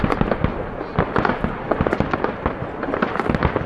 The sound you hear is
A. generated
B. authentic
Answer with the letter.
B